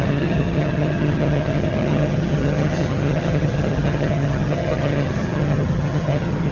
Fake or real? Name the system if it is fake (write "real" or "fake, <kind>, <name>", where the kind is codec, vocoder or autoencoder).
fake, vocoder, HiFi-GAN